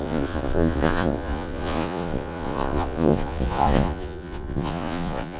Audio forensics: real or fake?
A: fake